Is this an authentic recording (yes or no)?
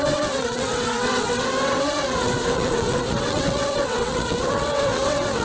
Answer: no